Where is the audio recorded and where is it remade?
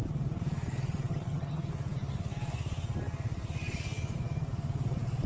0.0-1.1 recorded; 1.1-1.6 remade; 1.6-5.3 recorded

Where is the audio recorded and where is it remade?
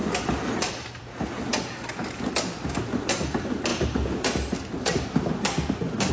0.0-6.1 recorded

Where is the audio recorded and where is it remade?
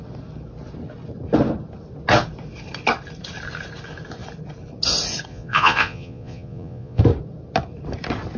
0.0-5.3 recorded; 5.3-7.0 remade; 7.0-8.4 recorded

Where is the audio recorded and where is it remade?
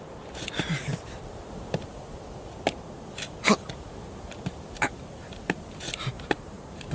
0.0-1.2 remade; 1.2-3.7 recorded; 3.7-6.9 remade